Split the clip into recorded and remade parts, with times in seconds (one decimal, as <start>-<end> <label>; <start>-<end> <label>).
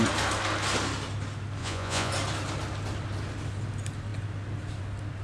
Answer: 0.0-1.6 recorded; 1.6-2.1 remade; 2.1-5.2 recorded